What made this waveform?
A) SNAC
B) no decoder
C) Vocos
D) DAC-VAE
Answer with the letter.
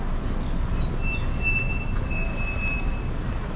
B